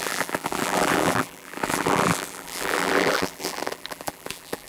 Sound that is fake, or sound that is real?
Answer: fake